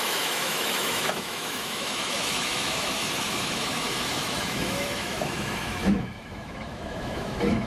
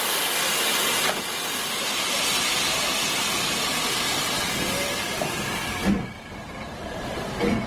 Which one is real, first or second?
second